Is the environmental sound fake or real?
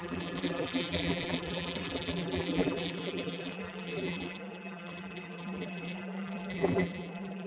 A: fake